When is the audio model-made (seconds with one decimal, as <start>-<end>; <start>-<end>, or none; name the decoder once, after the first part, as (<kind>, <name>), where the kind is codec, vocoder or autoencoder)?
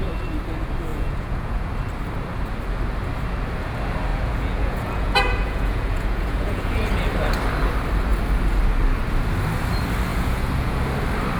0.9-1.7 (vocoder, Vocos); 4.1-6.7; 10.1-10.8